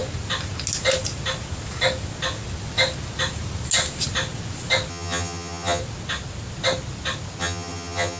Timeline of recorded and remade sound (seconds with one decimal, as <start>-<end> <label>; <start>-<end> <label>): 0.0-4.9 recorded; 4.9-5.8 remade; 5.8-7.4 recorded; 7.4-8.2 remade